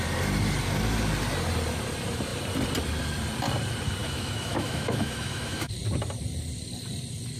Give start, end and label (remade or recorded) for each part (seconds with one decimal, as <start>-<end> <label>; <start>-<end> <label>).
0.0-4.0 recorded; 4.0-5.7 remade; 5.7-7.4 recorded